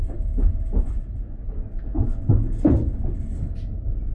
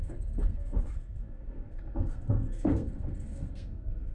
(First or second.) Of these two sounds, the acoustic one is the first